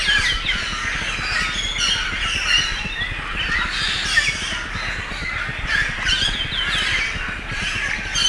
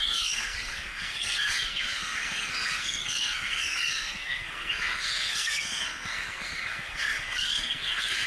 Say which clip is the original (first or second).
first